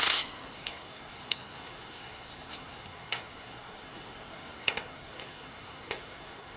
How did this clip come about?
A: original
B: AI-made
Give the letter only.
B